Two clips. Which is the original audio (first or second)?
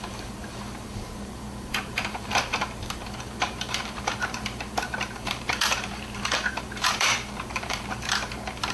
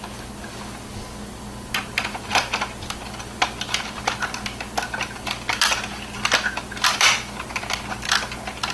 second